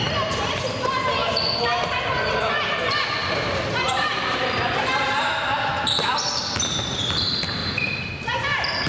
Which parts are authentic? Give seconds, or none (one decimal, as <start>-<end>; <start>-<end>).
0.0-3.2; 5.7-7.6; 8.4-8.9